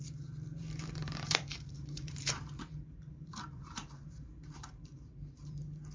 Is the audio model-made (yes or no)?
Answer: yes